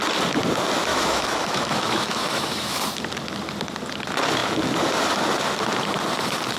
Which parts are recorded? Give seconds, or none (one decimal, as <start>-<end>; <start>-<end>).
0.0-0.9; 2.8-6.6